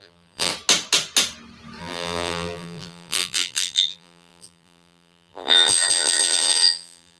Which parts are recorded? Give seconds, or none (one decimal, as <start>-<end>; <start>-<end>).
0.5-1.8